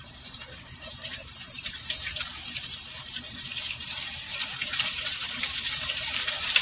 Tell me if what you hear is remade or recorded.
remade